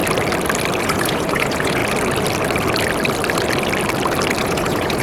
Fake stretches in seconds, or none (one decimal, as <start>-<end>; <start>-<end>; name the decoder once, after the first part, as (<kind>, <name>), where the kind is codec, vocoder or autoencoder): 0.8-1.8 (vocoder, Vocos); 4.4-5.0